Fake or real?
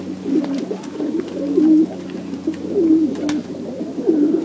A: real